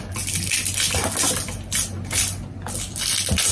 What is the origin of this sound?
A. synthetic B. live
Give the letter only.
B